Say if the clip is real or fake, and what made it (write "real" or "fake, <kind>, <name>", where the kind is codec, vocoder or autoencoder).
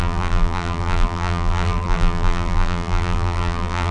fake, vocoder, BigVGAN v2